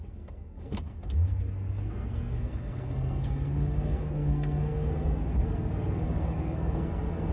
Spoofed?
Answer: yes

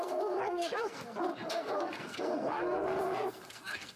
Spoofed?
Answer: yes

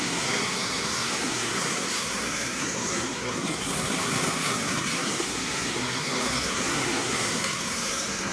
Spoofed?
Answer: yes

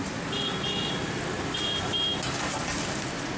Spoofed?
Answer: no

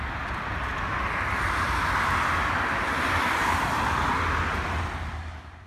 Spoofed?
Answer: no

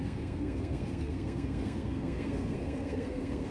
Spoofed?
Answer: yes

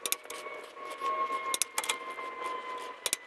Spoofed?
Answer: no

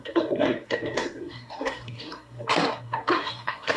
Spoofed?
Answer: yes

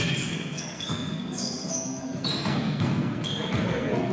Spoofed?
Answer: yes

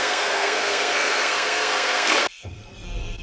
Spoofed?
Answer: yes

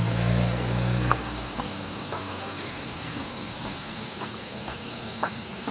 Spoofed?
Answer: yes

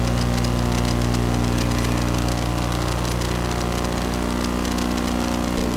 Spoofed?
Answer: no